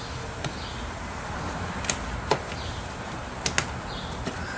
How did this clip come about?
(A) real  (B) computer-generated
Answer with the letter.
A